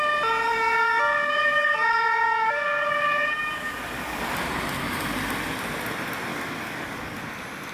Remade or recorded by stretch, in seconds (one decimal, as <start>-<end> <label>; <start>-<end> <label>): 0.0-0.5 recorded; 0.5-4.2 remade; 4.2-6.3 recorded; 6.3-7.2 remade; 7.2-7.7 recorded